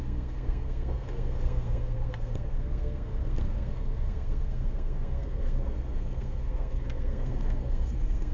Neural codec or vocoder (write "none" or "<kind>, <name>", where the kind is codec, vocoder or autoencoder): codec, SNAC